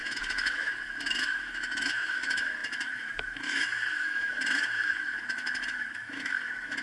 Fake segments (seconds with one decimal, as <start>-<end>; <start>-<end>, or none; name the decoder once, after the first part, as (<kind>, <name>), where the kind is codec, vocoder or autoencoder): 0.0-6.8 (autoencoder, DAC-VAE)